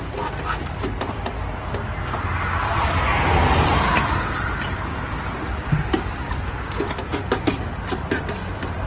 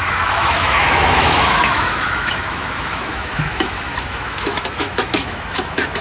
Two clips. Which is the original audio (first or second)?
first